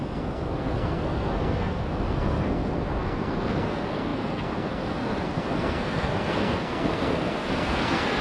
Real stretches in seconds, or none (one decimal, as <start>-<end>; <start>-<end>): none